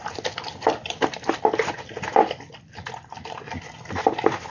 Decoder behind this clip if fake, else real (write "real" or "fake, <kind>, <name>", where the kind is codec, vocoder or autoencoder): real